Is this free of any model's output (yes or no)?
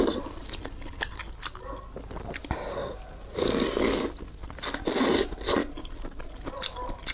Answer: yes